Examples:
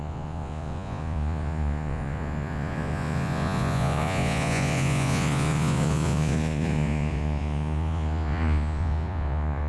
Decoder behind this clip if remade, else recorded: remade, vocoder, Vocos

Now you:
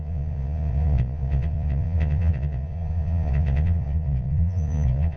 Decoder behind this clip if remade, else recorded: remade, vocoder, Vocos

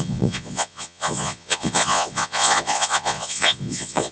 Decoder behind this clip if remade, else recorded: remade, vocoder, Vocos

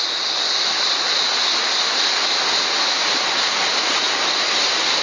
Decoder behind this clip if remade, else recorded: recorded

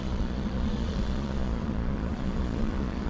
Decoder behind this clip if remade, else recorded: remade, vocoder, Vocos